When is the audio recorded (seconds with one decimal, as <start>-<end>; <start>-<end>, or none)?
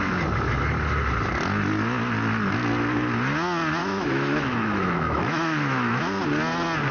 0.0-3.8; 6.0-6.9